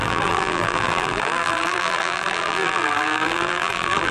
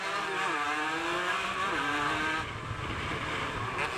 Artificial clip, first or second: first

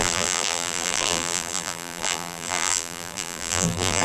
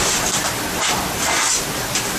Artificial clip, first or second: first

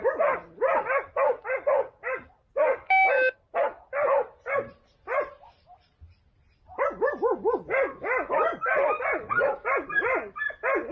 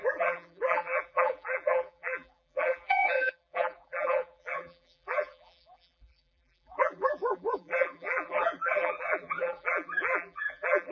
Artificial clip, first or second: second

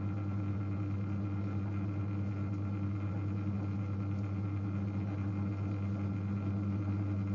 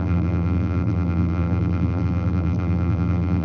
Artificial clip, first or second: second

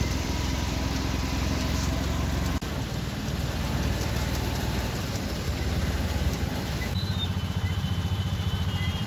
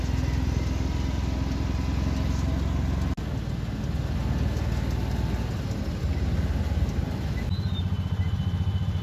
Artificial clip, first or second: first